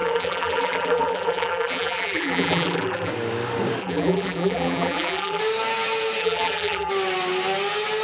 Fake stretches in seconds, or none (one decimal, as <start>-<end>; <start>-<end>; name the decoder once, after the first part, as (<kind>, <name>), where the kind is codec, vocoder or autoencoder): 0.0-3.1 (vocoder, BigVGAN v2); 3.8-5.4; 6.2-6.9